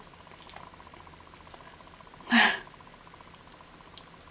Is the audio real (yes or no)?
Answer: yes